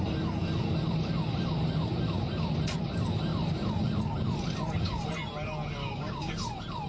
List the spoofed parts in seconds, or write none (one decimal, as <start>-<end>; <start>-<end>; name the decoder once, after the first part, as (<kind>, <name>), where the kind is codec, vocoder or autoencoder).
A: 5.8-6.3 (codec, DAC)